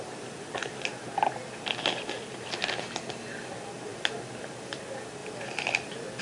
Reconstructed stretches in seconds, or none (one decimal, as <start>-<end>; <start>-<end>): none